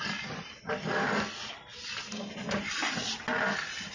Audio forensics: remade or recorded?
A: recorded